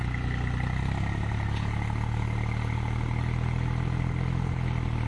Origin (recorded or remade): recorded